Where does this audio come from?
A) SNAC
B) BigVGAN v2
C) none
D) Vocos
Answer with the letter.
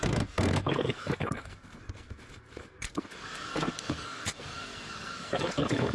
A